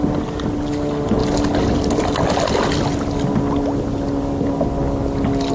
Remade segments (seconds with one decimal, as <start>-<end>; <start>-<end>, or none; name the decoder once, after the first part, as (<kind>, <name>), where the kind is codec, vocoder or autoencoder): none